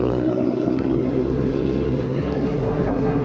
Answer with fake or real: fake